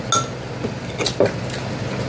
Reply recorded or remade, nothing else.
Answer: recorded